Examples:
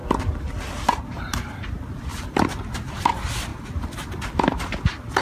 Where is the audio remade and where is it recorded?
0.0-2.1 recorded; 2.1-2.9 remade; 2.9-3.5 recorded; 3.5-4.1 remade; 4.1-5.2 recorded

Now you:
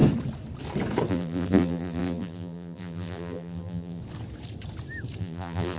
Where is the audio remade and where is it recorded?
0.0-1.1 recorded; 1.1-4.0 remade; 4.0-5.2 recorded; 5.2-5.8 remade

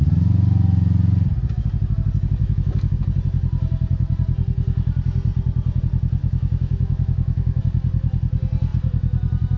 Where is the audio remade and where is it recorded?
0.0-2.4 recorded; 2.4-3.0 remade; 3.0-6.2 recorded; 6.2-7.6 remade; 7.6-9.6 recorded

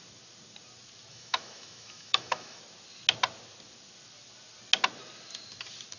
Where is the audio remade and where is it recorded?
0.0-1.1 recorded; 1.1-2.6 remade; 2.6-6.0 recorded

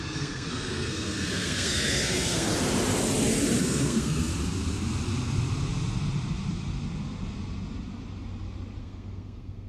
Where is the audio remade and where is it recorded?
0.0-2.5 remade; 2.5-3.6 recorded; 3.6-4.3 remade; 4.3-8.8 recorded; 8.8-9.7 remade

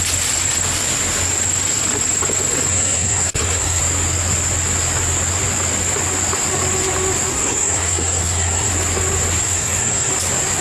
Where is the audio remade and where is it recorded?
0.0-2.7 recorded; 2.7-3.8 remade; 3.8-7.3 recorded; 7.3-8.7 remade; 8.7-9.4 recorded; 9.4-10.1 remade; 10.1-10.6 recorded

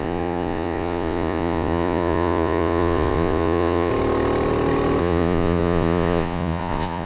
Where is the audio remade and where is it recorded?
0.0-3.9 remade; 3.9-5.0 recorded; 5.0-7.0 remade

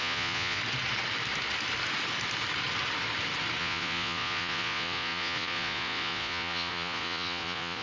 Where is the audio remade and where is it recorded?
0.0-0.6 remade; 0.6-3.6 recorded; 3.6-7.8 remade